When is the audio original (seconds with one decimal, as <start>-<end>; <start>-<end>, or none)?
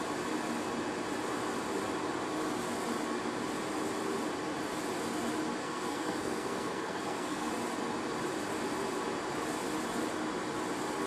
0.0-5.6; 7.5-11.1